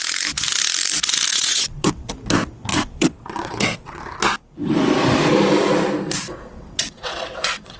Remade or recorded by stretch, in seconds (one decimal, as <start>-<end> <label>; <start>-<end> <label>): 0.0-1.3 recorded; 1.3-2.1 remade; 2.1-2.7 recorded; 2.7-4.0 remade; 4.0-6.5 recorded; 6.5-7.8 remade